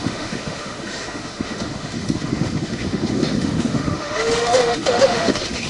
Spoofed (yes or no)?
yes